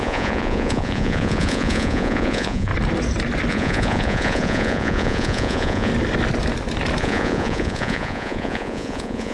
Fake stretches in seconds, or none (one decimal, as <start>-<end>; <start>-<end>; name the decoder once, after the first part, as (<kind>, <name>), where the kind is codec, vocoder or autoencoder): 0.0-2.7 (vocoder, Vocos); 3.5-5.9; 7.0-9.3